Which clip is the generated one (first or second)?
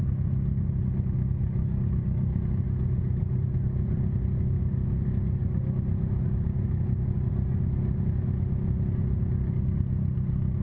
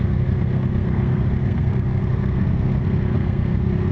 second